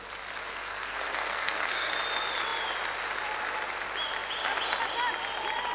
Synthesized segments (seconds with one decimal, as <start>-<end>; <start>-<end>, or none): 0.5-1.9